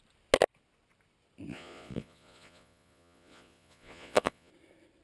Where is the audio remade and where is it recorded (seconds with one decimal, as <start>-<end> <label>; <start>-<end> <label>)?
0.0-1.5 recorded; 1.5-4.5 remade; 4.5-5.0 recorded